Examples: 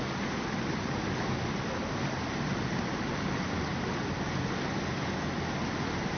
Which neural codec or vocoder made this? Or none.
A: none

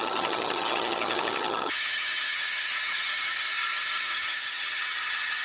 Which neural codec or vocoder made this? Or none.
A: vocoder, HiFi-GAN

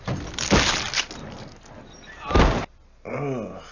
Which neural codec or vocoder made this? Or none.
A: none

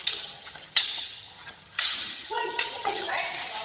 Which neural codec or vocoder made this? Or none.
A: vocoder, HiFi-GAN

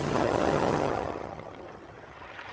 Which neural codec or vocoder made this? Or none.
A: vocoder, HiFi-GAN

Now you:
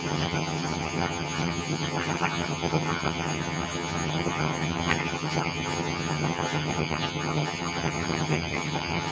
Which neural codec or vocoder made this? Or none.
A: vocoder, HiFi-GAN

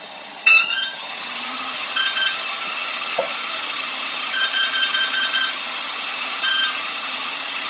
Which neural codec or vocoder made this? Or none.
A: vocoder, HiFi-GAN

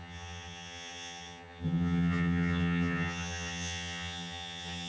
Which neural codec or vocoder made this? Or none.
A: vocoder, HiFi-GAN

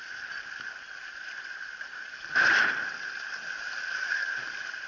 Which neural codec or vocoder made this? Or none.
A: none